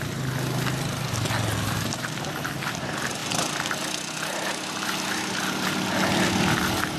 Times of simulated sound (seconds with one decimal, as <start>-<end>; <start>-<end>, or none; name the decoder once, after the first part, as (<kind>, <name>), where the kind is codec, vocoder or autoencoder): none